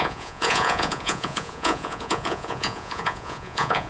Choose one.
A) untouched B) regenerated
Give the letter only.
B